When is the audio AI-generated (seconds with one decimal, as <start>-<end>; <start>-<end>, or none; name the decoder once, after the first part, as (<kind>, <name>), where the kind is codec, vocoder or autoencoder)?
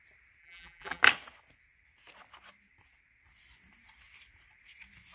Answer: 0.4-1.0 (vocoder, BigVGAN v2)